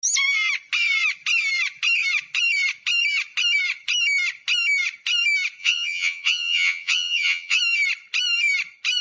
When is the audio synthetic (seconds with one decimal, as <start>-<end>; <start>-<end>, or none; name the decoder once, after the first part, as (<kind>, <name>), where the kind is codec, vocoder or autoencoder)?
5.6-7.6 (vocoder, HiFi-GAN)